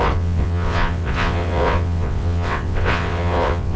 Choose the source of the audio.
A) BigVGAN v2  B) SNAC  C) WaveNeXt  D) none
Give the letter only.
C